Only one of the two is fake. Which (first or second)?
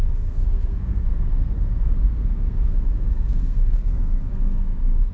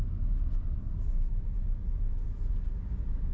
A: first